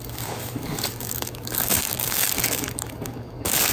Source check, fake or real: fake